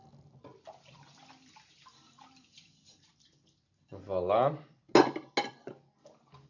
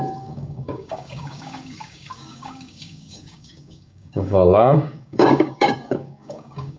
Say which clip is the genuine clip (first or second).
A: first